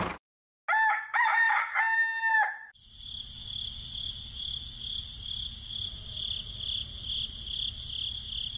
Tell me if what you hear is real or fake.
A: real